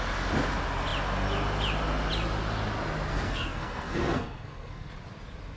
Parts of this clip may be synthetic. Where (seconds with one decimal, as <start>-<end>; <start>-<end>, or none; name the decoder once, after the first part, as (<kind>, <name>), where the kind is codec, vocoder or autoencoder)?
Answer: 3.1-4.9 (codec, SNAC)